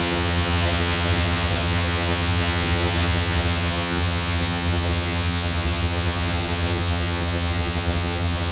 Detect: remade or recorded remade